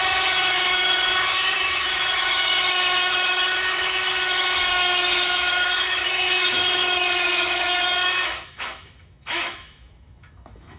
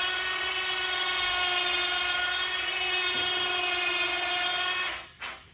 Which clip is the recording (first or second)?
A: second